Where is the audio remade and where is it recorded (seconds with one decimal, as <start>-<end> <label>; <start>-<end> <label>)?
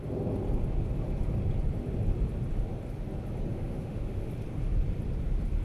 0.0-3.5 recorded; 3.5-4.3 remade; 4.3-5.6 recorded